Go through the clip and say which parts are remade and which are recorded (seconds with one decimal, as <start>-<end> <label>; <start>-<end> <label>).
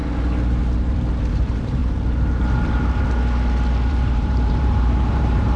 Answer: 0.0-1.3 recorded; 1.3-1.8 remade; 1.8-3.9 recorded; 3.9-5.6 remade